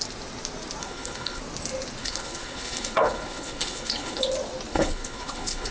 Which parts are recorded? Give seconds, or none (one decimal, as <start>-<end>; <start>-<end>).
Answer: 0.0-0.8; 1.4-2.0; 4.2-4.7